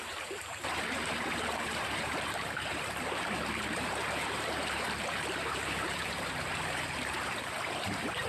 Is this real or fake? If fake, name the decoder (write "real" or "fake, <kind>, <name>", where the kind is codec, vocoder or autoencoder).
fake, vocoder, BigVGAN v2